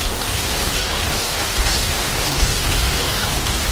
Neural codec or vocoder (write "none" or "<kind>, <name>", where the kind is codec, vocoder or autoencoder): codec, DAC